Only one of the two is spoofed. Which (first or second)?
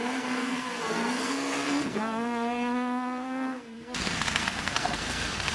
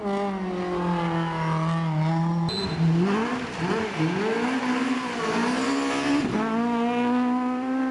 first